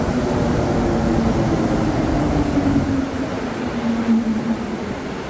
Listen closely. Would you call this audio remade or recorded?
recorded